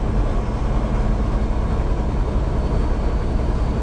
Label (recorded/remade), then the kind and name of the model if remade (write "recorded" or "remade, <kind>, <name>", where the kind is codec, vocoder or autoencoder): recorded